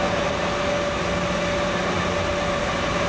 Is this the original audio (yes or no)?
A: yes